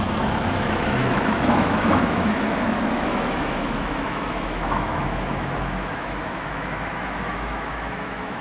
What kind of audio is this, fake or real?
fake